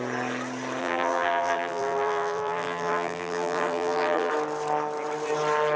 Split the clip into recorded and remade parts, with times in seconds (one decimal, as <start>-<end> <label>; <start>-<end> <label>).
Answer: 0.0-0.8 recorded; 0.8-4.3 remade; 4.3-5.8 recorded

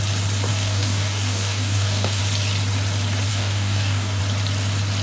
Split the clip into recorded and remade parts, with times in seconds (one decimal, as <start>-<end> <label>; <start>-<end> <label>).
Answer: 0.0-0.5 recorded; 0.5-2.2 remade; 2.2-3.3 recorded; 3.3-4.2 remade; 4.2-5.0 recorded

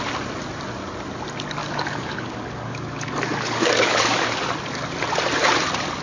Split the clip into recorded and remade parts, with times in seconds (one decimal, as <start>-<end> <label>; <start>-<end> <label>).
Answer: 0.0-1.6 recorded; 1.6-4.5 remade; 4.5-6.0 recorded

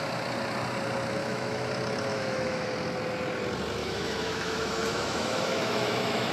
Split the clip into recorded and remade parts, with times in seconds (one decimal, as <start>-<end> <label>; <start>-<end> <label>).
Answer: 0.0-1.2 recorded; 1.2-1.7 remade; 1.7-2.1 recorded; 2.1-2.7 remade; 2.7-3.8 recorded; 3.8-6.3 remade

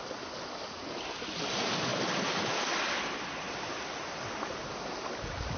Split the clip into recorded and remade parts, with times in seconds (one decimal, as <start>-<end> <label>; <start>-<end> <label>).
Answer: 0.0-5.6 recorded